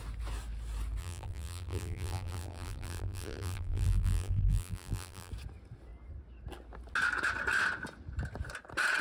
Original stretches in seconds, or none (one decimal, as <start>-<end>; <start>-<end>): 0.0-1.0; 5.3-9.0